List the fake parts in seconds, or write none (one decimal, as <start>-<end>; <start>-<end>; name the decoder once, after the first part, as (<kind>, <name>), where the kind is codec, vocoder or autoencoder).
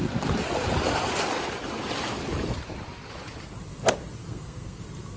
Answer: 4.2-4.8 (codec, SNAC)